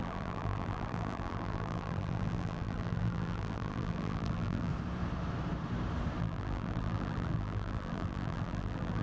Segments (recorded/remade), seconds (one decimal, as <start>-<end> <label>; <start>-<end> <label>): 0.0-4.7 remade; 4.7-6.2 recorded; 6.2-9.0 remade